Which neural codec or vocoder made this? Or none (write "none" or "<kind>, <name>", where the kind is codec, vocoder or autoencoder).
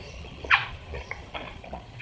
vocoder, Vocos